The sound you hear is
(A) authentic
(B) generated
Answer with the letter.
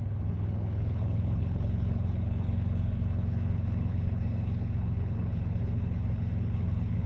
B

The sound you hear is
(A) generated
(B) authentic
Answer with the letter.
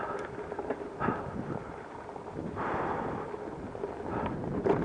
B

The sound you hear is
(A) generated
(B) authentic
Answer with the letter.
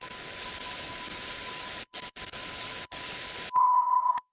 A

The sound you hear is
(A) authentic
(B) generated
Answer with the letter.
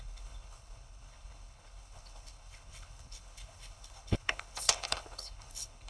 B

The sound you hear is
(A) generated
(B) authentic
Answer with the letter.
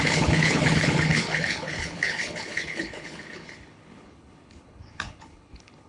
A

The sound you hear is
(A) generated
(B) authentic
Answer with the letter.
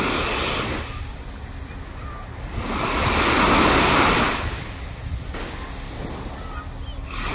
B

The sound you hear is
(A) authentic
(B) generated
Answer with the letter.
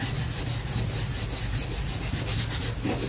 A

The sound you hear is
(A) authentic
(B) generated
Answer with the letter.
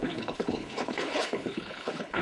B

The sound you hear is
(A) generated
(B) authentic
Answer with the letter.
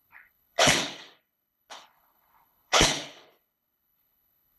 A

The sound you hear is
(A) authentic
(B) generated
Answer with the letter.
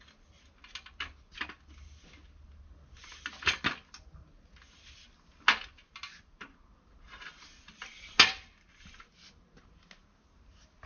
A